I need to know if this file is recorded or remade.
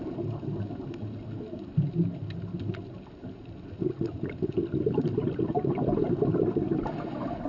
recorded